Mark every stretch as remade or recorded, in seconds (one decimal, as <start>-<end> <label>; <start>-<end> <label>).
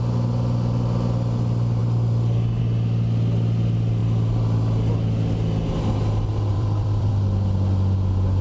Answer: 0.0-6.5 recorded; 6.5-7.1 remade; 7.1-8.4 recorded